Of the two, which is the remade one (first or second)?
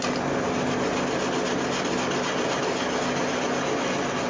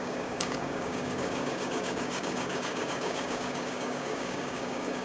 second